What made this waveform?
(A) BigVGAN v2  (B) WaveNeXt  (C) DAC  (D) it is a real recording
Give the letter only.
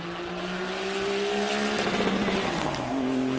D